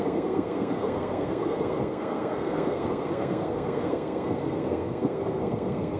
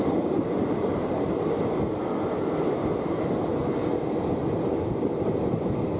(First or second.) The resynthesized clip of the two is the first